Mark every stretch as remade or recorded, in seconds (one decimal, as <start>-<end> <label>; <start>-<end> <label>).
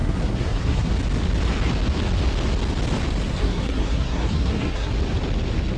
0.0-0.9 remade; 0.9-3.3 recorded; 3.3-4.9 remade; 4.9-5.8 recorded